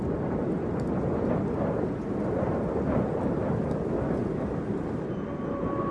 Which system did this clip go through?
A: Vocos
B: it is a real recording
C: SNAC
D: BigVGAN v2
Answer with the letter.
B